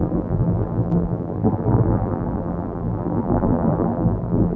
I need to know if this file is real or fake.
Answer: fake